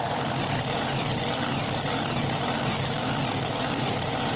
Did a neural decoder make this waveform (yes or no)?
yes